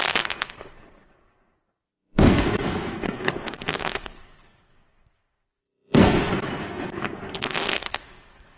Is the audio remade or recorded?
remade